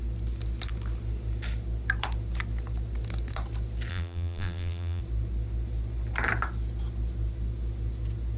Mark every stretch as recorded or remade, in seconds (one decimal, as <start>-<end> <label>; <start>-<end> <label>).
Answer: 0.0-3.9 recorded; 3.9-5.0 remade; 5.0-8.4 recorded